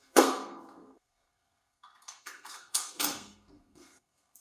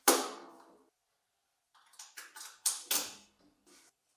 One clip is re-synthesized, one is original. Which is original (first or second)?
second